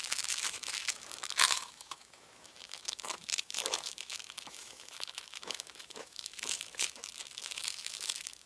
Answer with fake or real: fake